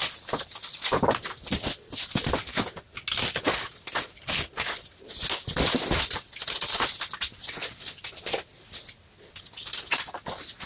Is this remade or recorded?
recorded